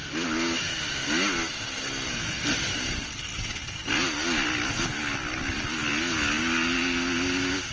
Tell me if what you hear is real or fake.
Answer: real